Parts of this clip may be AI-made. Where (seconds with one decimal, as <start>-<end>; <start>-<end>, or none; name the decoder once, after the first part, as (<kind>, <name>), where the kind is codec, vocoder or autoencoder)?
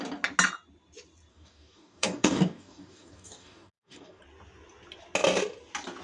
1.3-4.2 (codec, DAC)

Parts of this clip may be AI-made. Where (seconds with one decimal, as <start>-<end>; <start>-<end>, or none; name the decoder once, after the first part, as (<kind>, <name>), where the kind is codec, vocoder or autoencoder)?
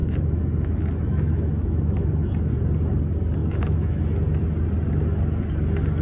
0.0-2.3 (autoencoder, DAC-VAE); 3.4-4.0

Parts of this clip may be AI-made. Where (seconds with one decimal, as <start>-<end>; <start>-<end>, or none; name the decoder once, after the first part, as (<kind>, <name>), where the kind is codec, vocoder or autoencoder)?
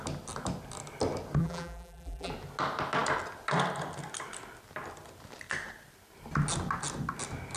1.4-2.3 (vocoder, BigVGAN v2)